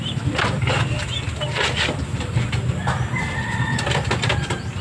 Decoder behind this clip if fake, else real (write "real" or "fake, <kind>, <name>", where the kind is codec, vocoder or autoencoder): real